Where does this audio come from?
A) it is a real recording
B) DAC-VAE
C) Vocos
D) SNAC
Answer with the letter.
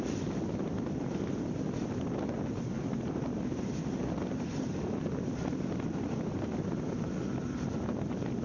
A